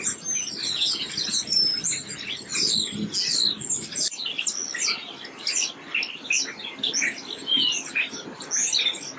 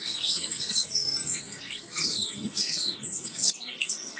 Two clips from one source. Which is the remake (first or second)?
second